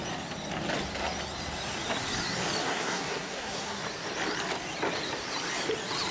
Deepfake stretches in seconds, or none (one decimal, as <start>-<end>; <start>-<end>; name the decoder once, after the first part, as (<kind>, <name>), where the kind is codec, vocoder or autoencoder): 2.6-3.8 (codec, SNAC)